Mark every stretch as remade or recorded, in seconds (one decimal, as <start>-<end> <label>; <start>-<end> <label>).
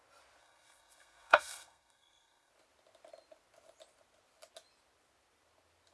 0.0-0.4 recorded; 0.4-2.5 remade; 2.5-5.9 recorded